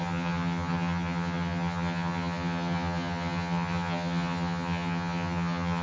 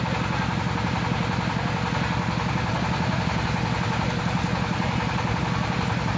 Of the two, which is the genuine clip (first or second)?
second